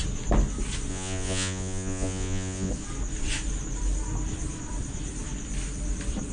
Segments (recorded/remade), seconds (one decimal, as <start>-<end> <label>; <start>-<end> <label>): 0.0-0.9 recorded; 0.9-2.7 remade; 2.7-6.3 recorded